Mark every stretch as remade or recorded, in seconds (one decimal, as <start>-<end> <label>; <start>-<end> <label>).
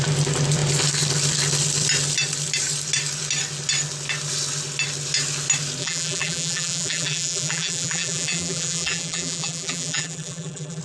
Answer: 0.0-5.8 recorded; 5.8-10.8 remade